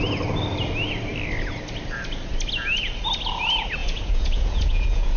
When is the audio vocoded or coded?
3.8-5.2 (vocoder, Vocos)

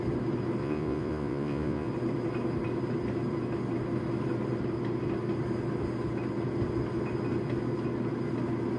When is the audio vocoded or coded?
0.6-1.9 (vocoder, Vocos)

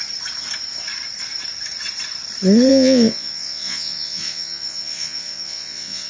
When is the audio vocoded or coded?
2.7-6.1 (vocoder, Vocos)